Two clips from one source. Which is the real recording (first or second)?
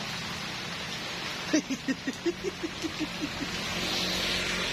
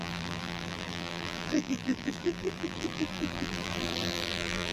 first